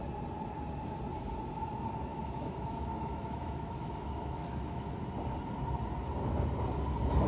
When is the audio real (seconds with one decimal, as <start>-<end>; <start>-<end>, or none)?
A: 0.0-2.1; 4.9-7.3